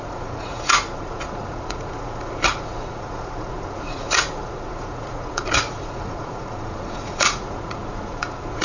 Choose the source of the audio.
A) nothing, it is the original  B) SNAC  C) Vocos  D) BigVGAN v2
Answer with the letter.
C